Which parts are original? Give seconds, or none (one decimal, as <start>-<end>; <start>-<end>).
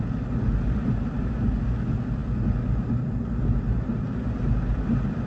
0.0-5.3